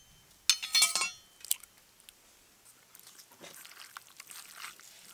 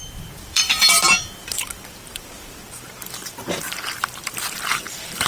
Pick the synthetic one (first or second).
second